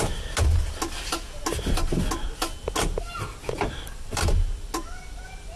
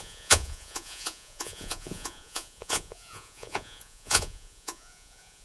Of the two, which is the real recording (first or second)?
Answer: first